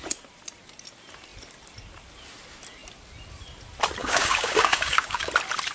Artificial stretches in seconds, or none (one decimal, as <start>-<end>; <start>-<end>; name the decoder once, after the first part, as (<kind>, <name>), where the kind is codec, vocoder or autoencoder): 4.0-5.3 (codec, DAC)

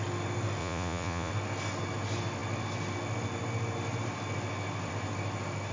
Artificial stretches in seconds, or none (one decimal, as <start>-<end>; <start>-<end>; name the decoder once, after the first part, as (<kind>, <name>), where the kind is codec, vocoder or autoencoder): 0.6-1.3 (vocoder, Vocos)